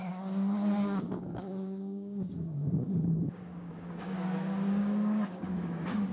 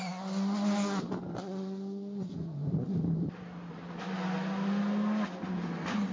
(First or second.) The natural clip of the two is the second